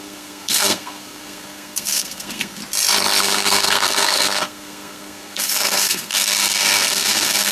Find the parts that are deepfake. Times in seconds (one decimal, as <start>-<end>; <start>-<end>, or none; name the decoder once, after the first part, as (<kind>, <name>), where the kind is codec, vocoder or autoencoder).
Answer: 0.0-2.6 (codec, SNAC); 3.2-7.5